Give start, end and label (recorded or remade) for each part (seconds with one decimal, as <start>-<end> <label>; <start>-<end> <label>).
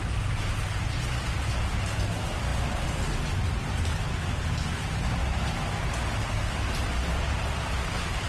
0.0-8.3 recorded